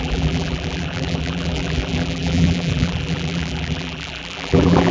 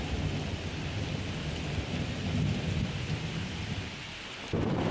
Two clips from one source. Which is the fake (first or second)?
first